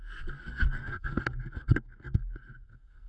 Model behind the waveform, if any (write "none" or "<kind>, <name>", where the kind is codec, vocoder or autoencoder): codec, SNAC